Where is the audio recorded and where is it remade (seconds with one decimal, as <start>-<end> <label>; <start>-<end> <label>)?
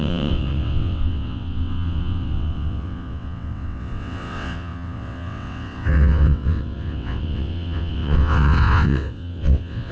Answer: 0.0-9.9 remade